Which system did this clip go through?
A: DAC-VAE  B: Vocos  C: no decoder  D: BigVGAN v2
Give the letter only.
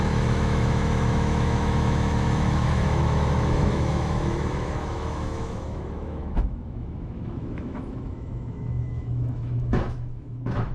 A